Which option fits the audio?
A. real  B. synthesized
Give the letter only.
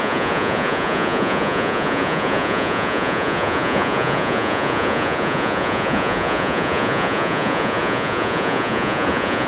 B